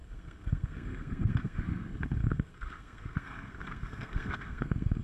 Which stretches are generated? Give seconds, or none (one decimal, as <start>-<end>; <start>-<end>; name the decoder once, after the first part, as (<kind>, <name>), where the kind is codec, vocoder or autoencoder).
0.0-5.0 (codec, SNAC)